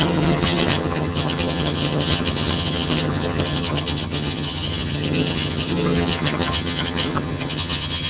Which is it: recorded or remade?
remade